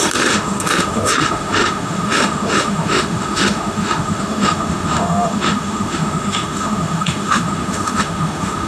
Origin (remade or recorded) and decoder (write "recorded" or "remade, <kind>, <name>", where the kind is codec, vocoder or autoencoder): remade, autoencoder, DAC-VAE